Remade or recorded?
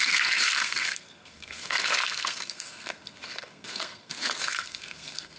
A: remade